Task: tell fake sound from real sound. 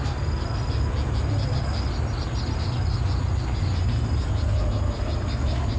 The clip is real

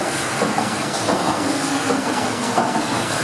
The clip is fake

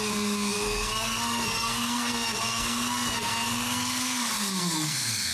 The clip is fake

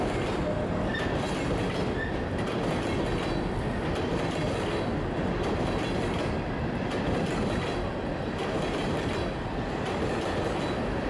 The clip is real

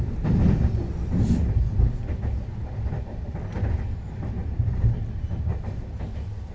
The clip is real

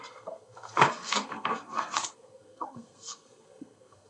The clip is fake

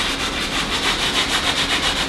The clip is real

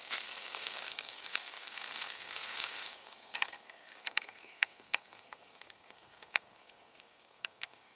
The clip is fake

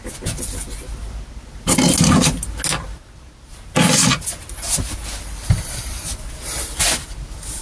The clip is real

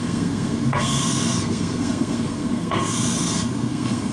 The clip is fake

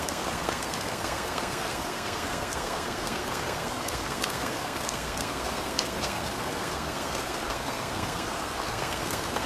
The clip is fake